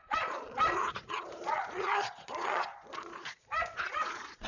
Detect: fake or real fake